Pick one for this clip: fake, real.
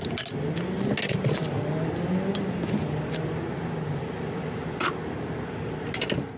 real